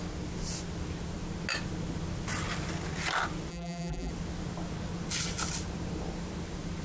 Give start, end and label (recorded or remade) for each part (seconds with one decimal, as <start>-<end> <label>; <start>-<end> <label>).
0.0-3.5 recorded; 3.5-4.1 remade; 4.1-6.8 recorded